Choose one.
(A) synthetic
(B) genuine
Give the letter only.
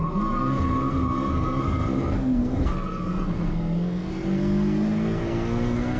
A